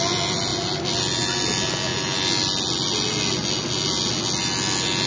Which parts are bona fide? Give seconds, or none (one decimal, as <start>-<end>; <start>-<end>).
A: 0.0-5.1